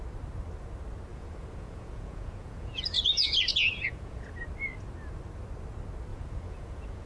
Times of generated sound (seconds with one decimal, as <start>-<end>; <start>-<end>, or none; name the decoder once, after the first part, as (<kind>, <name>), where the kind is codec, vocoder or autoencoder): 1.1-4.4 (vocoder, Vocos); 6.1-7.1

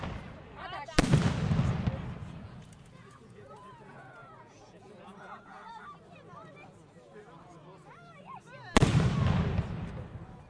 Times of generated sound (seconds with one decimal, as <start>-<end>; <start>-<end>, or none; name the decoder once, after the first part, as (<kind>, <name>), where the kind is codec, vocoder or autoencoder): 2.2-5.8 (vocoder, Vocos)

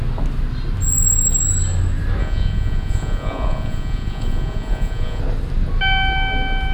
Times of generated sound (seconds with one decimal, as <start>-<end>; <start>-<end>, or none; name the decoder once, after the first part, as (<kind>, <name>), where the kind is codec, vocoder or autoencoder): 2.2-5.2 (vocoder, Vocos)

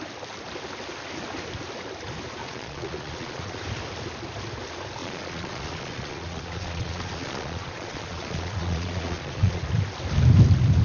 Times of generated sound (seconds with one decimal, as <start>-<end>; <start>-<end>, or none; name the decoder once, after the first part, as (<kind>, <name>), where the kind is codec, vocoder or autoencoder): 2.4-3.6 (vocoder, Vocos); 5.0-9.6